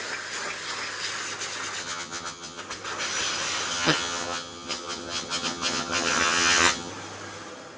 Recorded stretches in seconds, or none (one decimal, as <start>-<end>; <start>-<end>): 0.0-1.8; 2.6-3.7; 6.9-7.8